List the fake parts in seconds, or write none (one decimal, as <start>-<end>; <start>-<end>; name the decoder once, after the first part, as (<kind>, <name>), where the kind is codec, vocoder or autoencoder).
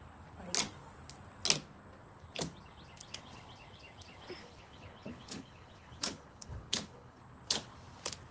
4.4-7.2 (codec, HILCodec)